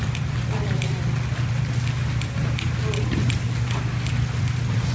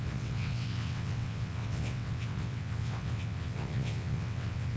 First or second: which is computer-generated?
second